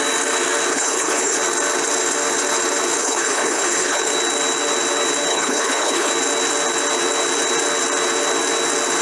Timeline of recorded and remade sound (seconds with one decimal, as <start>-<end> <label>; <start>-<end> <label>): 0.0-0.7 recorded; 0.7-1.4 remade; 1.4-3.0 recorded; 3.0-4.1 remade; 4.1-5.3 recorded; 5.3-6.1 remade; 6.1-9.0 recorded